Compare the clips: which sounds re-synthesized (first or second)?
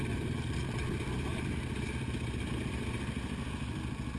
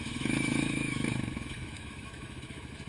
second